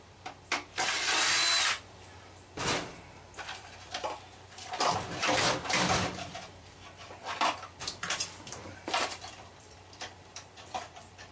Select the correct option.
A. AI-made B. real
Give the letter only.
A